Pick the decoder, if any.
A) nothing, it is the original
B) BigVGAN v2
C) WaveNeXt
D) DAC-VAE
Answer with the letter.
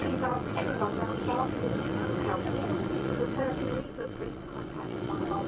C